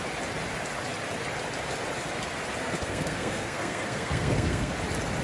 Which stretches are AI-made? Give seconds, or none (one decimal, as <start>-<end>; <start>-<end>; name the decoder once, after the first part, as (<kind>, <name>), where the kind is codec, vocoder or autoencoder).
2.6-4.7 (codec, SNAC)